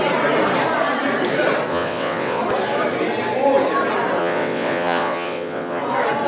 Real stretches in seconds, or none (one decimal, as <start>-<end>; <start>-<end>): 0.0-1.7; 2.4-4.2; 5.8-6.3